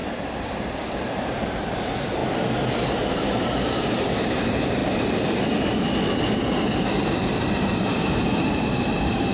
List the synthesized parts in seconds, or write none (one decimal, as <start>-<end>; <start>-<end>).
0.0-2.2; 2.9-4.8; 6.0-9.3